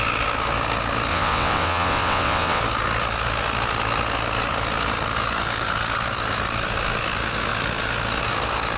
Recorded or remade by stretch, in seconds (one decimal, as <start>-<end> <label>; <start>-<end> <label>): 0.0-1.1 recorded; 1.1-2.6 remade; 2.6-8.8 recorded